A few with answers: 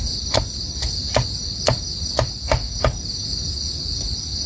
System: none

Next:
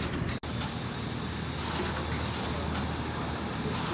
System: none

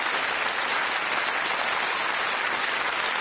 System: none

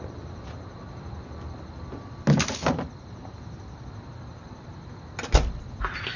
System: none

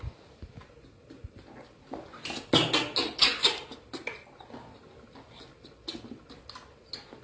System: none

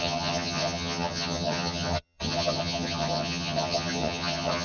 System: vocoder, HiFi-GAN